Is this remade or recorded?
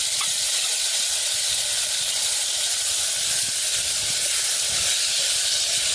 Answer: recorded